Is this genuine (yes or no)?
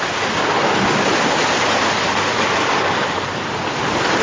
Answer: yes